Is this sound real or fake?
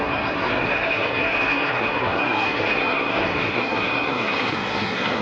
fake